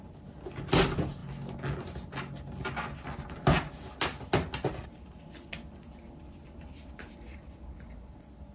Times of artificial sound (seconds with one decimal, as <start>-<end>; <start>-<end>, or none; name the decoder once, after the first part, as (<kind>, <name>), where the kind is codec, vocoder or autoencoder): none